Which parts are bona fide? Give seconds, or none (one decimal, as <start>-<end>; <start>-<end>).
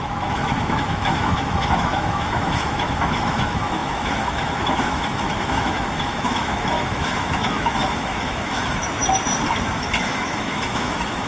9.0-9.8